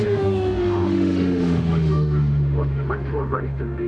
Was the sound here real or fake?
fake